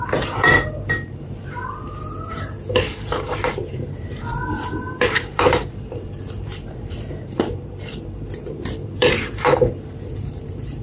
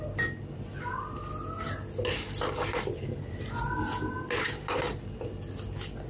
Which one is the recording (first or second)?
second